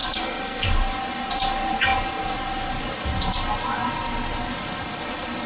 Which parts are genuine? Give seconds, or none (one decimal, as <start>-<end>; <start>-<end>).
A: 0.7-5.5